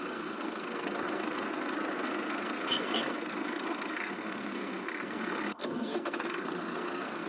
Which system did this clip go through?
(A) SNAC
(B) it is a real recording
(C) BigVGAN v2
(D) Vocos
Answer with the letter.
A